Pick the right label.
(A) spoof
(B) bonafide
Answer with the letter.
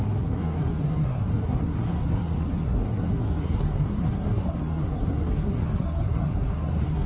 A